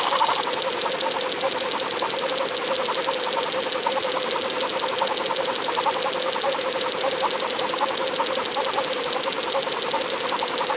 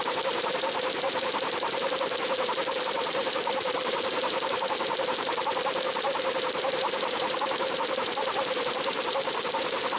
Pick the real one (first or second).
first